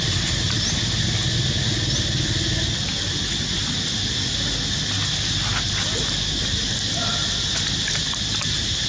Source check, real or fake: real